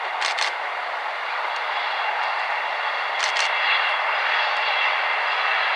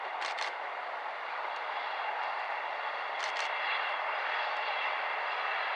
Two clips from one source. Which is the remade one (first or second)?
second